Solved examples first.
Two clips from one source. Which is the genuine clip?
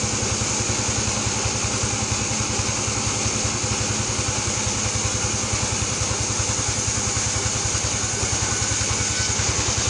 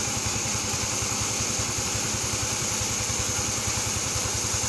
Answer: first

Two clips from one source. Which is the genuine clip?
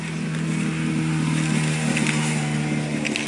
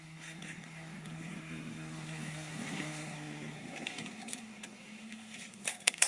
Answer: first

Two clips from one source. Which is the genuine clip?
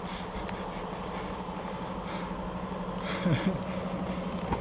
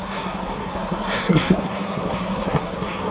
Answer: first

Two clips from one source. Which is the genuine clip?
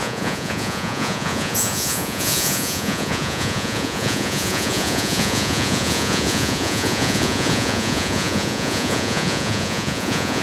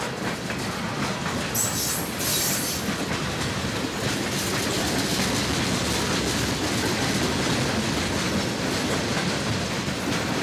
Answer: second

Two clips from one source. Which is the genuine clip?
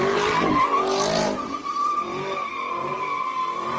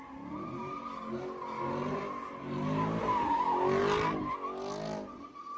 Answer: second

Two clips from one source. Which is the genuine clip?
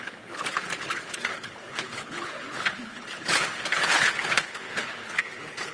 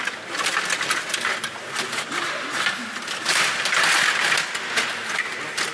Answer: second